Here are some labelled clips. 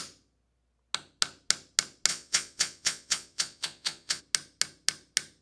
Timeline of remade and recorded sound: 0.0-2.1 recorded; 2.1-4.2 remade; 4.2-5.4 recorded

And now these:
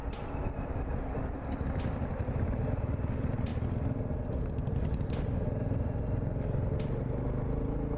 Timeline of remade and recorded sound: 0.0-8.0 recorded